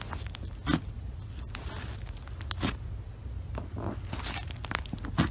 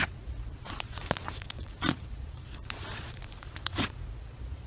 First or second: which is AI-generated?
second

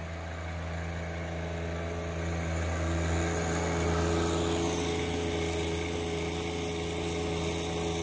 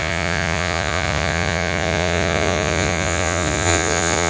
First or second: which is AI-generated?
second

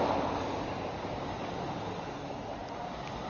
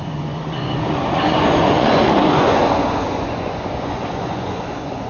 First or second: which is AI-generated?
second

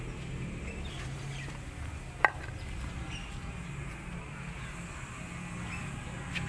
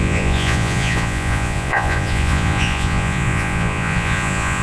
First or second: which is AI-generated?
second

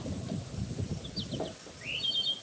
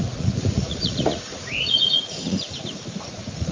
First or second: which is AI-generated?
second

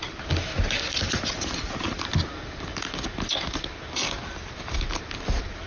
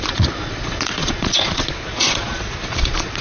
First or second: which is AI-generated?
second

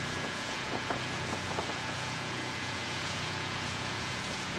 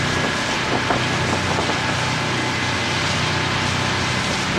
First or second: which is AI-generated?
first